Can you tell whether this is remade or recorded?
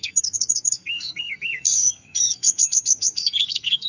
remade